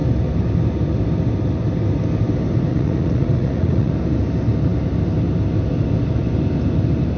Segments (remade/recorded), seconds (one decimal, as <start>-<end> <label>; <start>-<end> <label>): 0.0-2.7 recorded; 2.7-3.9 remade; 3.9-7.2 recorded

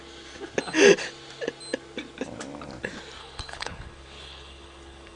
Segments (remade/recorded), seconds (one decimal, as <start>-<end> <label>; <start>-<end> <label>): 0.0-3.2 recorded; 3.2-5.2 remade

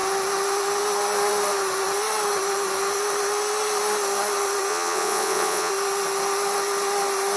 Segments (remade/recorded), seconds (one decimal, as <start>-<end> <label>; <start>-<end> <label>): 0.0-4.7 recorded; 4.7-5.7 remade; 5.7-7.4 recorded

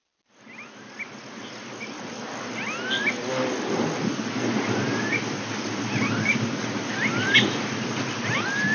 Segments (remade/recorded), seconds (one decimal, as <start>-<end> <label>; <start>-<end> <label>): 0.0-8.7 recorded